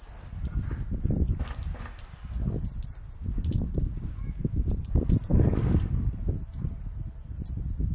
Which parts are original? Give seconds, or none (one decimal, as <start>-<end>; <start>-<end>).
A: 0.0-3.2; 4.6-5.3; 5.9-7.9